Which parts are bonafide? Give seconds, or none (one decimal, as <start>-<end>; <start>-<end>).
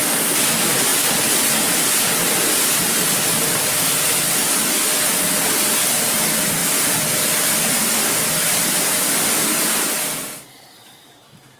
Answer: 0.0-11.6